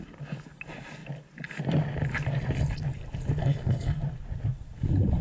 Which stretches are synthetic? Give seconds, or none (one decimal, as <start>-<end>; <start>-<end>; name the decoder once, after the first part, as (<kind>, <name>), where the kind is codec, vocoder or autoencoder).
3.4-4.0 (codec, SNAC)